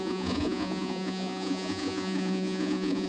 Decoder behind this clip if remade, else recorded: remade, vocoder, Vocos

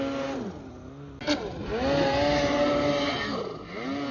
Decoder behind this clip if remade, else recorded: recorded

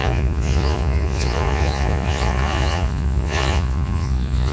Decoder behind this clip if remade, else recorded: remade, vocoder, Vocos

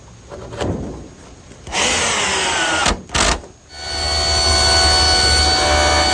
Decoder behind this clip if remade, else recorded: recorded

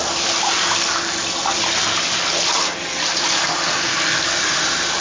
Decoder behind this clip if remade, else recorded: remade, vocoder, BigVGAN v2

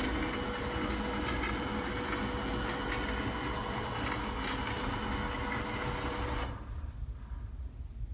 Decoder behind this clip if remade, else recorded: recorded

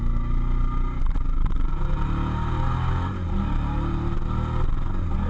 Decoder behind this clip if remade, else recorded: recorded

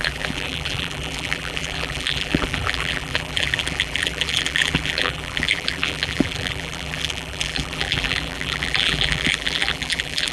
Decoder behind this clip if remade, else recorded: remade, vocoder, BigVGAN v2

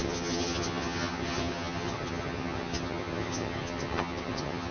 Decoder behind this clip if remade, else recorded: remade, vocoder, HiFi-GAN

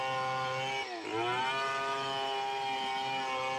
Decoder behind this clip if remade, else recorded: recorded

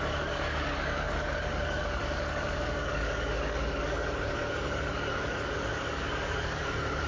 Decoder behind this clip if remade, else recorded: remade, codec, DAC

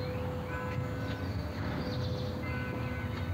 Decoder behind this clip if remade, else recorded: recorded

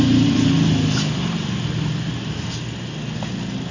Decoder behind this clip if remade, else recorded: recorded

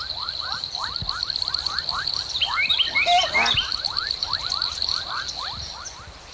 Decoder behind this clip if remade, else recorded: recorded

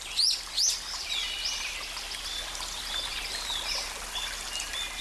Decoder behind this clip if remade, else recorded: recorded